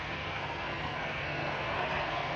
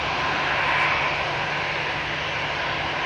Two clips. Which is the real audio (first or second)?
second